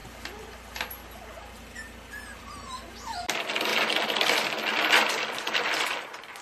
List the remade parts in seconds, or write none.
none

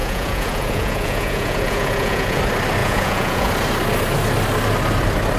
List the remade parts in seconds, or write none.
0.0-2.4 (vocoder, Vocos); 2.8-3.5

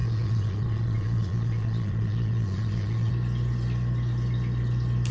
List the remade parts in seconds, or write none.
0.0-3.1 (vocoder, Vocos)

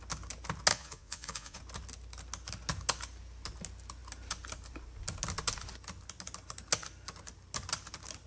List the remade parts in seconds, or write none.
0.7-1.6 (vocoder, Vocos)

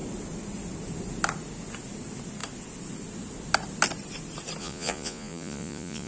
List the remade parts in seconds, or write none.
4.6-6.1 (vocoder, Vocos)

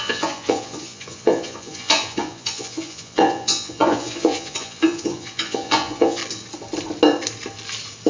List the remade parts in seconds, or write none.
0.0-6.2 (vocoder, Vocos)